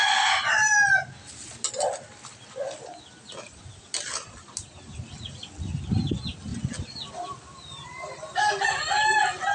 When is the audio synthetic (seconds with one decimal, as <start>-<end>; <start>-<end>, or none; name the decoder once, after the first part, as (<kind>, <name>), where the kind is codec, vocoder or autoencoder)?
none